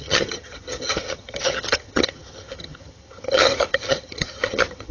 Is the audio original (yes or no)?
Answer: no